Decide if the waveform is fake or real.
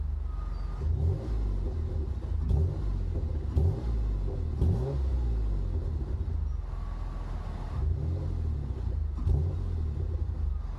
real